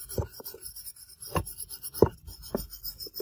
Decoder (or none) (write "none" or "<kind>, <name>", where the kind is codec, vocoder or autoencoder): none